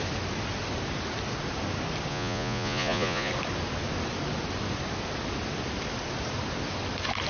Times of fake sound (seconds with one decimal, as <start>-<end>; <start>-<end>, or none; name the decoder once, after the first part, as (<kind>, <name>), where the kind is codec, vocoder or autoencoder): 2.1-3.3 (vocoder, Vocos)

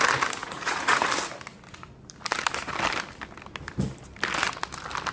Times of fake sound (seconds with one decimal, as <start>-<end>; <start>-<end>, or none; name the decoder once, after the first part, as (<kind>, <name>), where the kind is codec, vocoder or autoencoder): 0.4-1.1 (vocoder, Vocos)

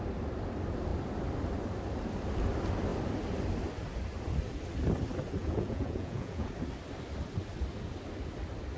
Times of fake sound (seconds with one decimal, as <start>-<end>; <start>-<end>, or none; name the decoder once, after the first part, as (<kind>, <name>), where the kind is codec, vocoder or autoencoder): 5.4-6.5 (vocoder, Vocos)

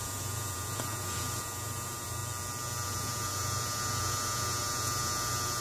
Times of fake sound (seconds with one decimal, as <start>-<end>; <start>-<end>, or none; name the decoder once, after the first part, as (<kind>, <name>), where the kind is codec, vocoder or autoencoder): 0.0-2.2 (vocoder, Vocos); 2.9-5.6

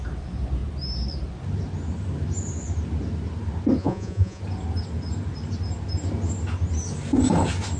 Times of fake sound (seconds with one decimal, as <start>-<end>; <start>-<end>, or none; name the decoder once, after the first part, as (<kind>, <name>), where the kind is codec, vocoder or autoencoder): 3.8-4.4 (vocoder, Vocos)

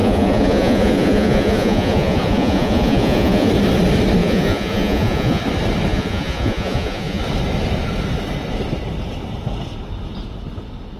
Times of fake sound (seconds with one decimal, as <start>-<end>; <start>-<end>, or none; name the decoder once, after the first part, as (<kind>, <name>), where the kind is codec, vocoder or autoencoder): 0.0-3.5 (vocoder, Vocos); 4.2-5.4; 5.9-7.2

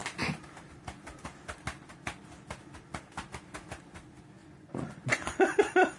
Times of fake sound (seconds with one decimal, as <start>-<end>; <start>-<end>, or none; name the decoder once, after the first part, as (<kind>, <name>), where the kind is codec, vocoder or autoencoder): 4.4-5.6 (vocoder, Vocos)